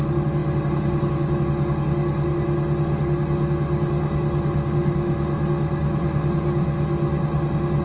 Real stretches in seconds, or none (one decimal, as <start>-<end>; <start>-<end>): 0.0-7.8

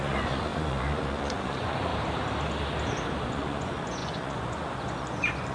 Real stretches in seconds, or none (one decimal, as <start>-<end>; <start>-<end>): 1.9-3.2